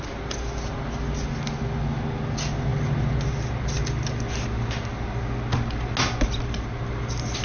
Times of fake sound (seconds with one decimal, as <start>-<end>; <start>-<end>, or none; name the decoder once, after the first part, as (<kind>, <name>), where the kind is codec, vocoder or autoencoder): none